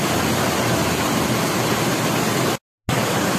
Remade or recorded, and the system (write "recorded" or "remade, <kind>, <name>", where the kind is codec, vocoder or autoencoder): recorded